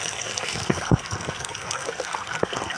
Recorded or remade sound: remade